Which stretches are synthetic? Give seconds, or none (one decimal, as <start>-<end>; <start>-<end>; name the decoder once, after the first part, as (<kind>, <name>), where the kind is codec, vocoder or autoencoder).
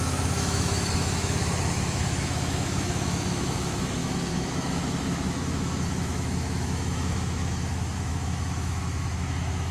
0.0-9.7 (autoencoder, DAC-VAE)